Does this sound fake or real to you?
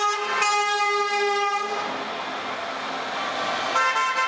real